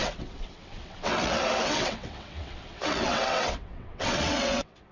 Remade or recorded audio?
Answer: remade